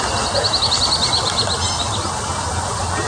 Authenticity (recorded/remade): recorded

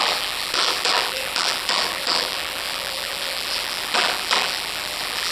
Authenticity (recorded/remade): remade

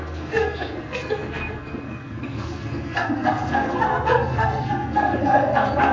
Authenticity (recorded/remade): remade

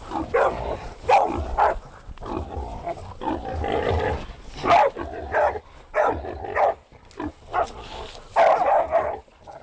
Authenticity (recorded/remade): recorded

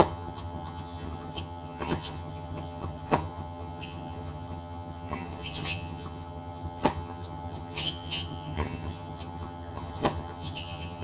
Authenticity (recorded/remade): remade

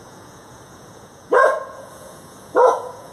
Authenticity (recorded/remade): remade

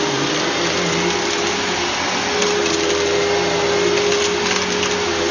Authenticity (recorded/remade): recorded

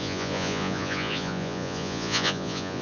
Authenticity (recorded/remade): remade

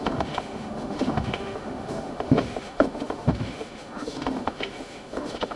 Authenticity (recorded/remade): remade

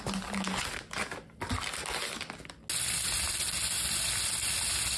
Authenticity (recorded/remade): recorded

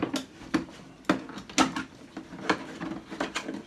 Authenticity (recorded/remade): recorded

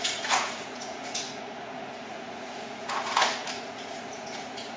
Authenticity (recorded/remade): remade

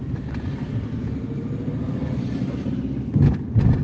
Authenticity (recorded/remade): recorded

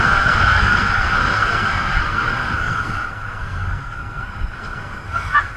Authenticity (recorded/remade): remade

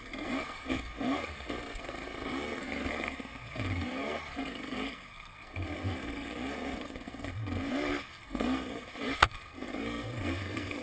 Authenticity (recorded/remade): remade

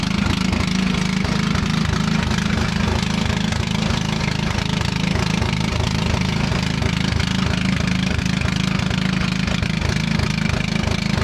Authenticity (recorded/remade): recorded